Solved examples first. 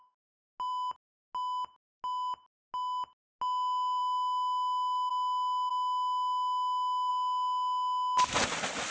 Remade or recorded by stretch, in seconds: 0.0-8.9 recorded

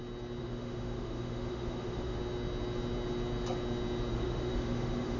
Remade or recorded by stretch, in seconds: 0.0-0.4 recorded; 0.4-2.2 remade; 2.2-4.1 recorded; 4.1-5.2 remade

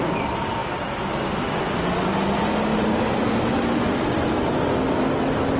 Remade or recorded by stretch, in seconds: 0.0-5.6 recorded

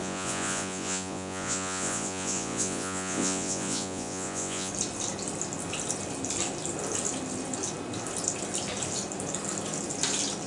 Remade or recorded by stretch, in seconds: 0.0-4.7 remade; 4.7-10.5 recorded

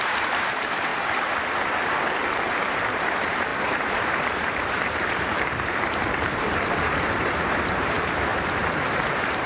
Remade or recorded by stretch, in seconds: 0.0-0.9 remade; 0.9-2.7 recorded; 2.7-9.5 remade